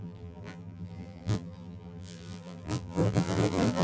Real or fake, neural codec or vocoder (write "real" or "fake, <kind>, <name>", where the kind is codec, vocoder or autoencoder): fake, vocoder, BigVGAN v2